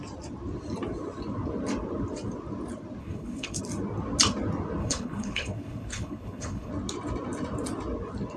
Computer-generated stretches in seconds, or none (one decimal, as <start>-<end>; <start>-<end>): 3.0-3.6; 4.8-6.7

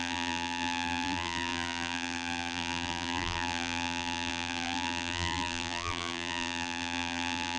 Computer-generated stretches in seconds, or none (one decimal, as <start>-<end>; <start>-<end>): 0.0-7.6

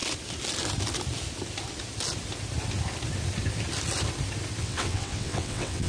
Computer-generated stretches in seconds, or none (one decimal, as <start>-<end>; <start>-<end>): 4.6-5.9